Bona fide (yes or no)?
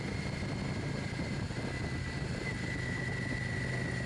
yes